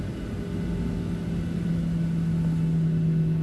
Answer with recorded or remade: recorded